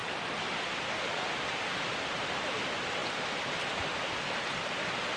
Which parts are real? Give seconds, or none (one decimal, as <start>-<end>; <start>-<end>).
0.0-5.2